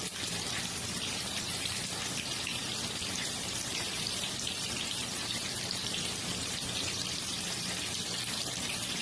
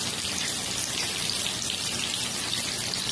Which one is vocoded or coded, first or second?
first